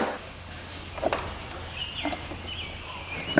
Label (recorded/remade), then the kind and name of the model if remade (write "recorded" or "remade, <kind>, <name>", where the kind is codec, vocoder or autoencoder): recorded